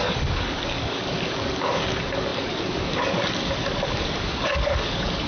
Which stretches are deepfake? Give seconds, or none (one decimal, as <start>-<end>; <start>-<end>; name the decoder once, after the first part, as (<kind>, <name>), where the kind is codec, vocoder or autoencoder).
0.0-5.3 (codec, DAC)